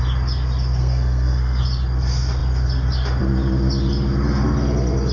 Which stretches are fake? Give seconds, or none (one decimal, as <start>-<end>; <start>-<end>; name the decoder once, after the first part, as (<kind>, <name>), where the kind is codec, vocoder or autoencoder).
0.8-1.6 (codec, SNAC)